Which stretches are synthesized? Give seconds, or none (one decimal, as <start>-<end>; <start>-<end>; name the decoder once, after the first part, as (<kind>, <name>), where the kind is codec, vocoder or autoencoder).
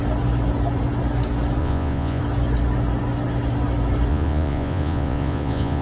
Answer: 1.6-2.2 (vocoder, Vocos); 4.1-5.8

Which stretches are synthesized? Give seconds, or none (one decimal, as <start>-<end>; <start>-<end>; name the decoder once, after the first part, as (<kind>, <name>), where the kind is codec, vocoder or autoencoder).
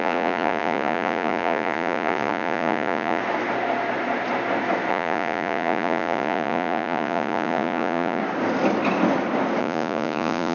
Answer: 0.0-3.2 (vocoder, Vocos); 4.9-8.2; 9.6-10.5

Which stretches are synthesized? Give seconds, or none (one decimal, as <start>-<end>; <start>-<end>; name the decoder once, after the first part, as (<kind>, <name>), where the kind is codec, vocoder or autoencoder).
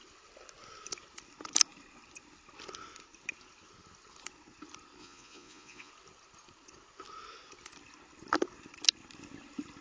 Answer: 5.0-5.9 (vocoder, Vocos)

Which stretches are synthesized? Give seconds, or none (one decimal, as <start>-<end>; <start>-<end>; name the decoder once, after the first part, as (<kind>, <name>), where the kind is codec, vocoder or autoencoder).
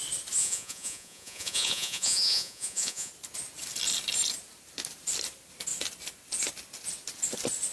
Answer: 0.4-3.1 (vocoder, Vocos)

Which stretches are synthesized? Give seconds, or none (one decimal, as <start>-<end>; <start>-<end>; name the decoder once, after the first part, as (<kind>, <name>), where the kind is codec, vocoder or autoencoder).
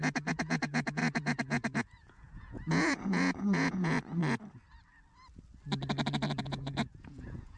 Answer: 0.0-4.2 (vocoder, Vocos); 6.4-7.6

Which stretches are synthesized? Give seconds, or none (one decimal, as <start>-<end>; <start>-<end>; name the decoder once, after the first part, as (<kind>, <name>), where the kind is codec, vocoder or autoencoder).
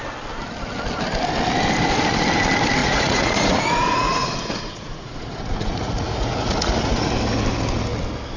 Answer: 2.8-6.8 (vocoder, Vocos)